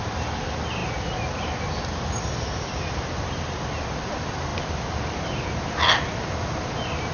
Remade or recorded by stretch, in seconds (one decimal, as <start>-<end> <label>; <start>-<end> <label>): 0.0-7.1 recorded